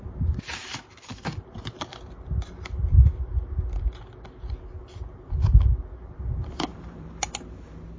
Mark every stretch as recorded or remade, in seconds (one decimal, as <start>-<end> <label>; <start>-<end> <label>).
0.0-0.6 recorded; 0.6-1.3 remade; 1.3-6.7 recorded; 6.7-7.3 remade; 7.3-8.0 recorded